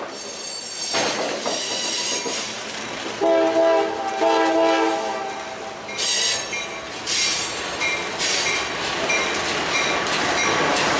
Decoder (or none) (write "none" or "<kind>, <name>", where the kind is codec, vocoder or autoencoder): none